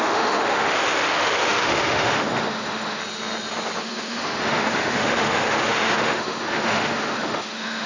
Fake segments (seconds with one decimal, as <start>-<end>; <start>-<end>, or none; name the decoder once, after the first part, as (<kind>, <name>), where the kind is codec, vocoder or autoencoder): 0.0-3.0 (autoencoder, DAC-VAE); 3.8-7.9